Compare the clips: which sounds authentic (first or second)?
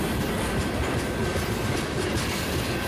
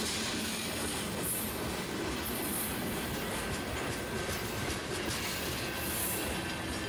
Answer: second